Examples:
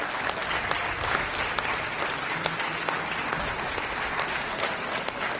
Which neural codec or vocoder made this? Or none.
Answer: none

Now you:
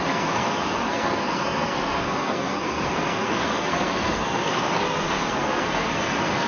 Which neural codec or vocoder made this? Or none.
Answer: codec, SNAC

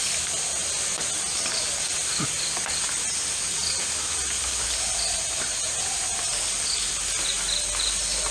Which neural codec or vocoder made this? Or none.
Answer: none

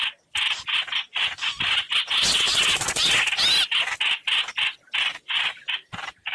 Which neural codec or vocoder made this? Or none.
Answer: none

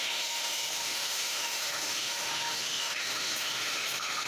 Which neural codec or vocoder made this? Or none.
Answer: autoencoder, DAC-VAE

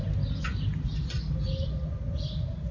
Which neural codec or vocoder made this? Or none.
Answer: none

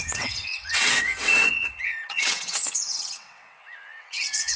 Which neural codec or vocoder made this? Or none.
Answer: vocoder, WaveNeXt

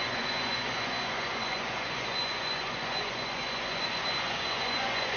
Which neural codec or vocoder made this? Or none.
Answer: vocoder, Vocos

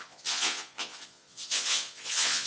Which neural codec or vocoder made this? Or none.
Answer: vocoder, Vocos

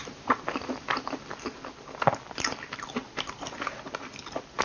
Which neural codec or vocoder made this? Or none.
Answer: none